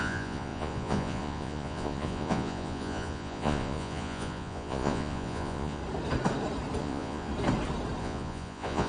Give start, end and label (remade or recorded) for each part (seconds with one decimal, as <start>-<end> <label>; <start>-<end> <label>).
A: 0.0-5.8 remade; 5.8-6.8 recorded; 6.8-7.3 remade; 7.3-8.0 recorded; 8.0-8.9 remade